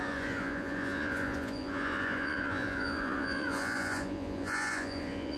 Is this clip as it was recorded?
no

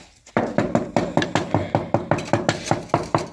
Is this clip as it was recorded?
yes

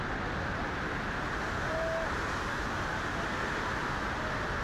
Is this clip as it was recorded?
yes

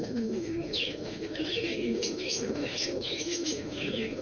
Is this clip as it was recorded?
no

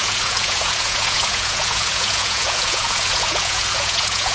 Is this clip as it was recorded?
no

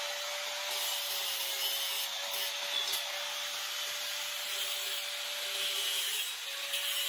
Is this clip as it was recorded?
yes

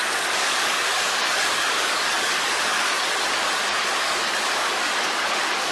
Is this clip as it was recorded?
no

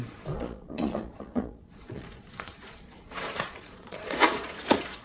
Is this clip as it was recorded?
no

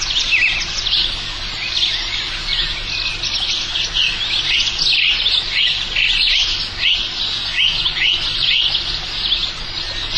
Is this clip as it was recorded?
yes